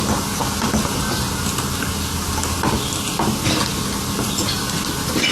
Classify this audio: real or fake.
real